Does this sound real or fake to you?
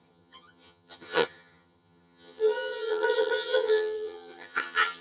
fake